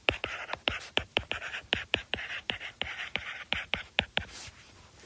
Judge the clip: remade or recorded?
remade